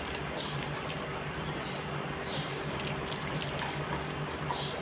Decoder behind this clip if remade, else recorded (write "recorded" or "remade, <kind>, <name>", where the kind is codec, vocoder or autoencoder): remade, vocoder, BigVGAN v2